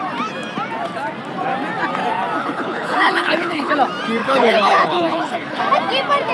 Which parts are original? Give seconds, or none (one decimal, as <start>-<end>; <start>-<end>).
0.0-2.4; 3.7-4.2; 5.6-6.3